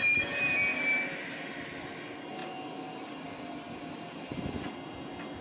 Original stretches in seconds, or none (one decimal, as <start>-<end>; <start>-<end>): 0.0-5.4

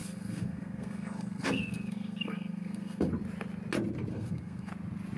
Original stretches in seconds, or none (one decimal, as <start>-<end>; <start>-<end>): 3.1-4.1; 4.7-5.2

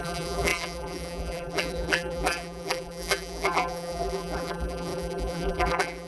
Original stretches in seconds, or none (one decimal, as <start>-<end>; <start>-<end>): none